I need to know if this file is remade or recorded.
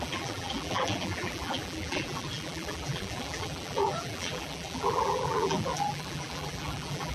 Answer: remade